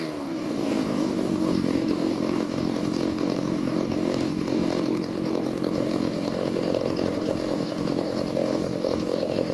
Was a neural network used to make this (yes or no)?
yes